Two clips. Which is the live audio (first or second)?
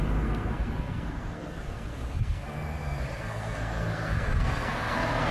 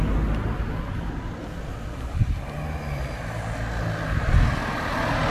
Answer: second